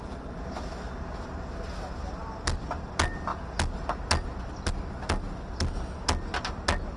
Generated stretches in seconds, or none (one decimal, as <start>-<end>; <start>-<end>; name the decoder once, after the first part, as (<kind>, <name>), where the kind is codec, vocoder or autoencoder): none